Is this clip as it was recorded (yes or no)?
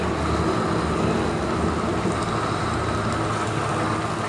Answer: yes